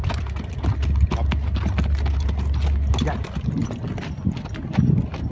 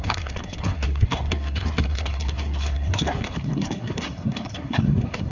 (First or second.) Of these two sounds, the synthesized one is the second